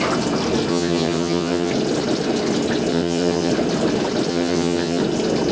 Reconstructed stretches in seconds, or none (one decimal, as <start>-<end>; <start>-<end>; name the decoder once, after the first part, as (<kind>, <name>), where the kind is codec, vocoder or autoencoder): 0.7-1.7 (vocoder, HiFi-GAN); 2.9-3.5; 4.3-5.0